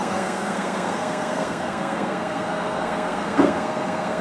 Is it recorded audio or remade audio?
remade